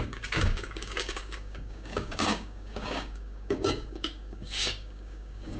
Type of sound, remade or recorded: remade